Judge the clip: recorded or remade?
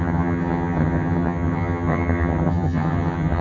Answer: remade